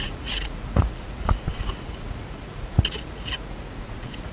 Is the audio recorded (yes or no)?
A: no